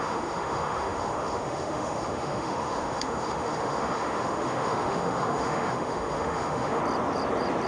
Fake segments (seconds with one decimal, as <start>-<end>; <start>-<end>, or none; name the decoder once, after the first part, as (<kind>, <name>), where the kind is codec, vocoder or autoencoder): 0.0-6.8 (autoencoder, DAC-VAE)